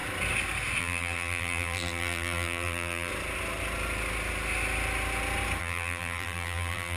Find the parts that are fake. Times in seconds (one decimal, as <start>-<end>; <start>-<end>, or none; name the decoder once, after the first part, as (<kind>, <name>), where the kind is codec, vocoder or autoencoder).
0.8-3.1 (vocoder, BigVGAN v2); 5.6-7.0